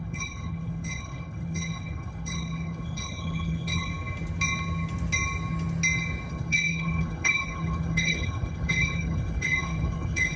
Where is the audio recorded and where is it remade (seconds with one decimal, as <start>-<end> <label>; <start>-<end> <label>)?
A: 0.0-3.9 remade; 3.9-6.3 recorded; 6.3-10.4 remade